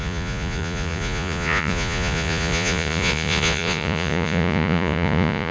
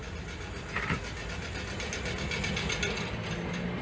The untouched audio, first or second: second